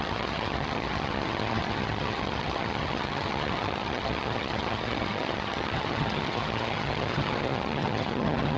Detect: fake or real fake